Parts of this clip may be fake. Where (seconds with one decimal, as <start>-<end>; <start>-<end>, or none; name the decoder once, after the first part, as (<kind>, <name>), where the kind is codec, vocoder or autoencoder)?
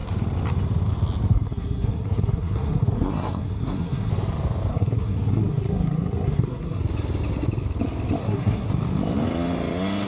1.3-4.1 (codec, SNAC); 4.7-6.8; 8.2-8.7